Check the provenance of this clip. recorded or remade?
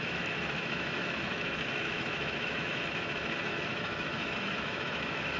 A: remade